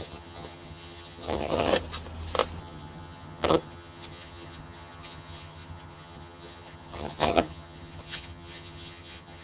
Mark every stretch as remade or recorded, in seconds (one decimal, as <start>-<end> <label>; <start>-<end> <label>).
0.0-1.7 remade; 1.7-2.6 recorded; 2.6-9.4 remade